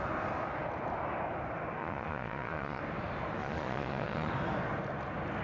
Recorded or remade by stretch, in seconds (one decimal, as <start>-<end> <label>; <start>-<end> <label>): 0.0-1.8 recorded; 1.8-2.8 remade; 2.8-3.4 recorded; 3.4-4.3 remade; 4.3-5.4 recorded